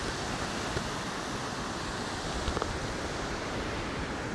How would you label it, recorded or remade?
recorded